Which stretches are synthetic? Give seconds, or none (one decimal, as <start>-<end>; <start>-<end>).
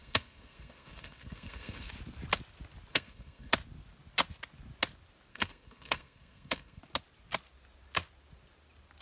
0.0-1.9; 2.9-3.5; 5.3-6.8